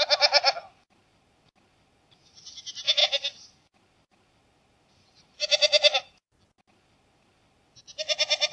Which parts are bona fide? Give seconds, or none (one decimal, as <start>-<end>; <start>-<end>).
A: 0.0-8.5